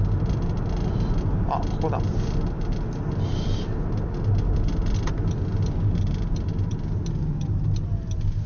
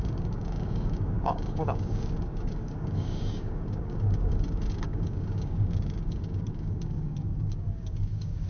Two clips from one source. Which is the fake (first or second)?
second